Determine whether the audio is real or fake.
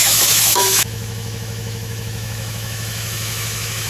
fake